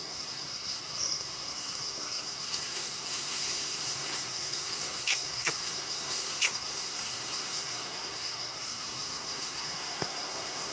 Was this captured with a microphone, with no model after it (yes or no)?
no